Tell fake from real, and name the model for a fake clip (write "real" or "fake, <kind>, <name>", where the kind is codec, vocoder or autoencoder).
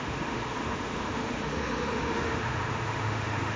fake, autoencoder, DAC-VAE